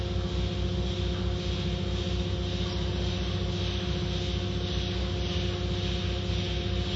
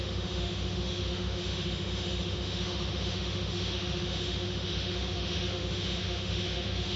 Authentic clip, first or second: first